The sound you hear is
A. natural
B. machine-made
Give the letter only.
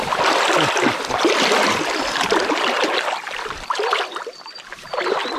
A